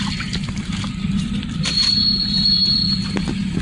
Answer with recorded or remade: recorded